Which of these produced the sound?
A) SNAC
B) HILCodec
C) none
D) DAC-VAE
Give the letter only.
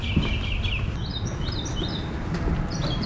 C